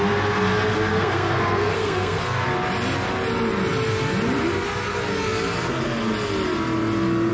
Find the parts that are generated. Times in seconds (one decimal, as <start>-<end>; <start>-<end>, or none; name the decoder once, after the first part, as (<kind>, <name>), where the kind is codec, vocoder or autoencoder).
0.9-2.2 (codec, SNAC)